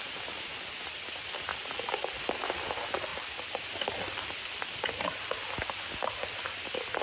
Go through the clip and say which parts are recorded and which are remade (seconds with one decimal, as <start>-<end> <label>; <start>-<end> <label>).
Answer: 0.0-7.0 recorded